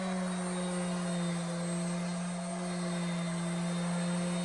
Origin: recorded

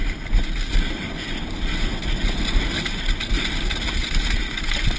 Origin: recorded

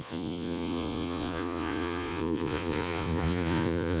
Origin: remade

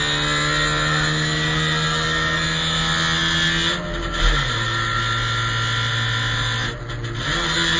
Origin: recorded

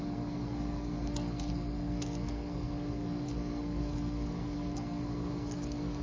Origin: remade